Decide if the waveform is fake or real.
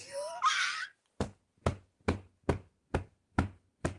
real